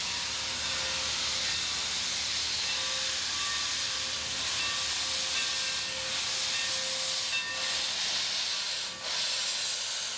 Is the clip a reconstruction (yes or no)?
no